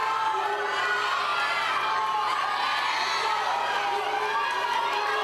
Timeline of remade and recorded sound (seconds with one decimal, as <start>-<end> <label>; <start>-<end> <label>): 0.0-5.2 recorded